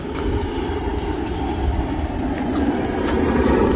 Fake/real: real